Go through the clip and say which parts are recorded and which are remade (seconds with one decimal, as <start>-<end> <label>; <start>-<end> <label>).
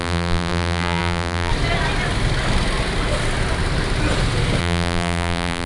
0.0-1.5 remade; 1.5-4.6 recorded; 4.6-5.7 remade